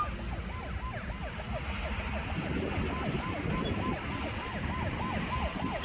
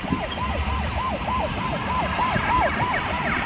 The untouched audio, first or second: first